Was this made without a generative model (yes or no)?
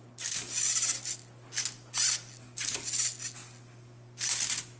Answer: yes